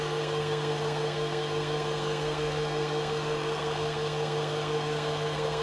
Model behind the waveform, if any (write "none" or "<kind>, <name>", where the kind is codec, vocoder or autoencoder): codec, SNAC